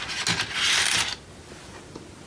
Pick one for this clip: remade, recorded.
recorded